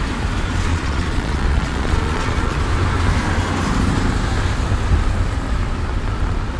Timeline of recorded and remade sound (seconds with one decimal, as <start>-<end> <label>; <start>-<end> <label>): 0.0-0.7 recorded; 0.7-2.6 remade; 2.6-6.6 recorded